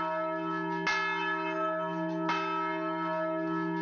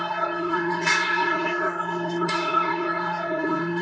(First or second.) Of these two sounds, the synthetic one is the second